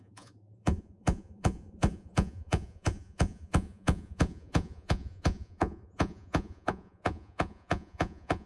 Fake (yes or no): yes